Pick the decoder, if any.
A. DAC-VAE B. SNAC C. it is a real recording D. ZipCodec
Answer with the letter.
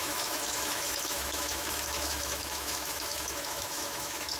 A